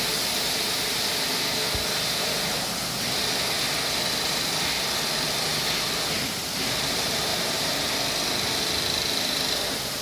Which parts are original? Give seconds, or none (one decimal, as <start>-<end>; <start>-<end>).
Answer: 0.0-10.0